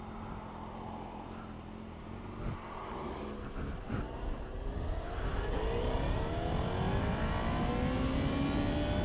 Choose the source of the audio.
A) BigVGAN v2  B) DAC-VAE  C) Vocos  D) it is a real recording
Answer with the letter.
D